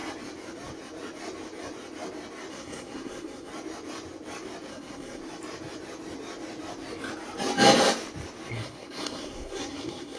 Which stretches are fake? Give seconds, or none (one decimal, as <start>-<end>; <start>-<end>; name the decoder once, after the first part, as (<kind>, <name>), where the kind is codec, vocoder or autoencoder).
2.5-3.5 (codec, SNAC); 4.7-5.2; 8.5-10.2